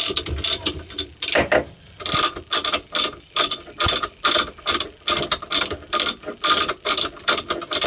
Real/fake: real